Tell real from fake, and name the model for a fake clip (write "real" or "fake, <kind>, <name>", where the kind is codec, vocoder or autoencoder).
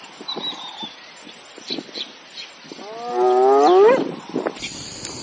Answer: real